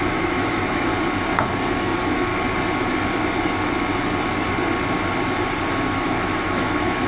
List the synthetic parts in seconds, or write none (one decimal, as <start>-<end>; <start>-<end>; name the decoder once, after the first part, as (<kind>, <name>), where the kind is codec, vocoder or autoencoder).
0.0-0.9 (autoencoder, DAC-VAE); 1.7-2.3; 5.7-7.1